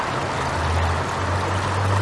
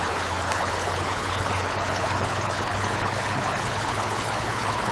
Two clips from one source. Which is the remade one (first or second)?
second